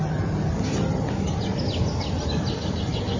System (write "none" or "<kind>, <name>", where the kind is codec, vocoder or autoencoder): none